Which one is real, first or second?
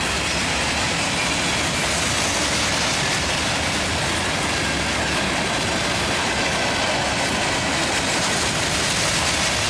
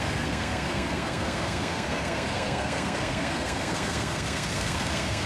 first